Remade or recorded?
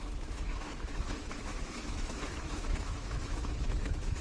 remade